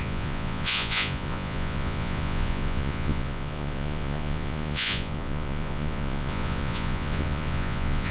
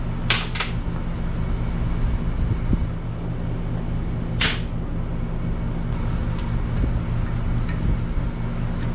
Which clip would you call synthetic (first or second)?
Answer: first